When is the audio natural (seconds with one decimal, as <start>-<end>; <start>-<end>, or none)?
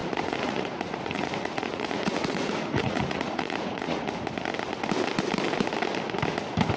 4.1-6.8